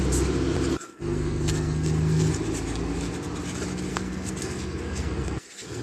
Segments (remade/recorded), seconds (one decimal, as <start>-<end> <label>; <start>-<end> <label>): 0.0-0.7 recorded; 0.7-2.3 remade; 2.3-3.9 recorded; 3.9-5.8 remade